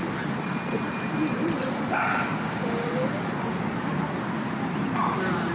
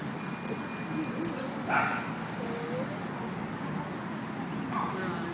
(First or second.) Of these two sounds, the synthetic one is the first